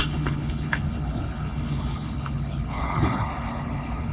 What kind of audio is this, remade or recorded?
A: remade